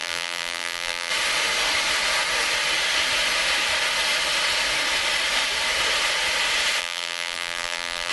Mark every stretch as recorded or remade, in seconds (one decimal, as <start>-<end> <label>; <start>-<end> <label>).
0.0-1.1 remade; 1.1-6.8 recorded; 6.8-8.1 remade